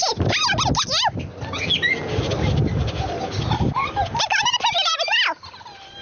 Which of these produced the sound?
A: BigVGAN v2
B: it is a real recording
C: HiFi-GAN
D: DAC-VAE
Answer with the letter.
B